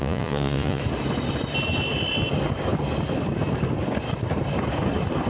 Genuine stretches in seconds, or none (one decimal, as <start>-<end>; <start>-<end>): 0.8-5.3